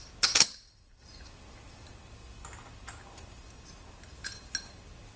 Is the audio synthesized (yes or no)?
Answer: no